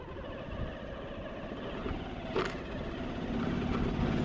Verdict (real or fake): real